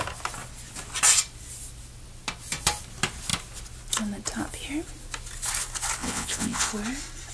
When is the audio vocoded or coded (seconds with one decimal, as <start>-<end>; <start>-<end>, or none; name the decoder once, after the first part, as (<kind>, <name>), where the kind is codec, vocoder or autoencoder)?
6.0-6.7 (vocoder, WaveNeXt)